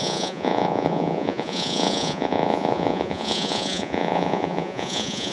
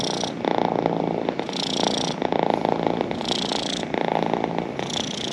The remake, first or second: first